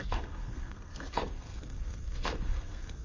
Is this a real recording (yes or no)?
no